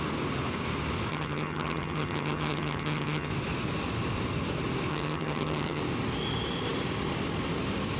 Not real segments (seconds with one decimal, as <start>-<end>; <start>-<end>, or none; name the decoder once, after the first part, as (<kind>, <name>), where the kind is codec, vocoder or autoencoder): 1.1-3.3 (vocoder, HiFi-GAN); 4.9-5.8